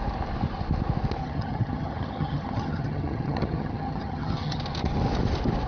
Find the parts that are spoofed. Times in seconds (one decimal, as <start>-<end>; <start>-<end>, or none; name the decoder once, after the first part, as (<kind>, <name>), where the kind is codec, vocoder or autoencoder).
1.2-4.6 (vocoder, HiFi-GAN)

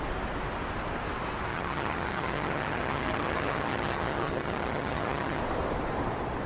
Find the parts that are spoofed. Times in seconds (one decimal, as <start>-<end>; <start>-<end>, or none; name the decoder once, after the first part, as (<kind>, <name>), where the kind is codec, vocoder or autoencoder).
1.5-5.4 (vocoder, HiFi-GAN)

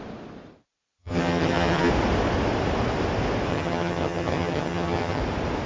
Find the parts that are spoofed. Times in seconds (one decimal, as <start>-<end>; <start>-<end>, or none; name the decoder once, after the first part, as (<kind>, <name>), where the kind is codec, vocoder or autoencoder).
1.0-1.9 (vocoder, HiFi-GAN); 3.5-5.2

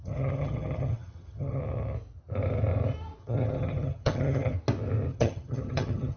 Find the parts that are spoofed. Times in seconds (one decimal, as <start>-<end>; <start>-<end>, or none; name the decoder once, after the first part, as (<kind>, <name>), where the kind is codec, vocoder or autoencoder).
0.0-1.6 (vocoder, HiFi-GAN); 3.2-4.5; 5.1-6.2

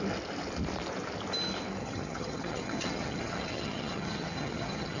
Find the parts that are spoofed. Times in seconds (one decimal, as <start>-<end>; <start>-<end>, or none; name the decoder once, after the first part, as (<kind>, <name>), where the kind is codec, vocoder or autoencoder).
1.8-5.0 (vocoder, HiFi-GAN)

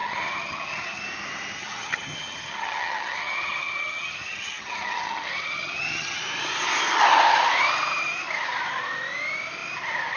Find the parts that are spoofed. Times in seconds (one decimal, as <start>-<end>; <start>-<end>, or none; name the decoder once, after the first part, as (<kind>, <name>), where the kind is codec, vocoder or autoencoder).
0.0-1.0 (vocoder, HiFi-GAN); 1.6-6.2

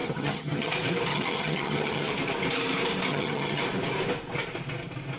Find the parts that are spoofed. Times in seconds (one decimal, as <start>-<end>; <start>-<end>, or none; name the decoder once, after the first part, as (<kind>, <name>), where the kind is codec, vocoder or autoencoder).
0.0-0.7 (vocoder, HiFi-GAN); 1.1-2.1; 3.1-3.6